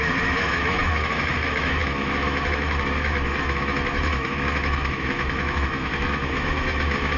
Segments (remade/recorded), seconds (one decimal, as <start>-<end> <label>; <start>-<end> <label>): 0.0-7.2 remade